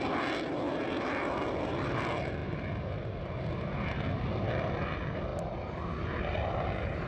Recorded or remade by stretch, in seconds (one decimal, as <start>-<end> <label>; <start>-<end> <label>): 0.0-7.1 recorded